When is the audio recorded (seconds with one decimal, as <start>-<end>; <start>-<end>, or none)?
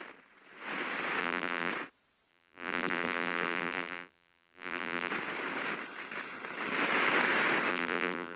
0.0-1.2; 1.7-2.3; 5.1-7.7